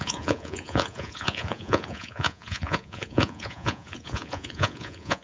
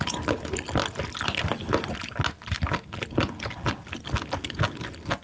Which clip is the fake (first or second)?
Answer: first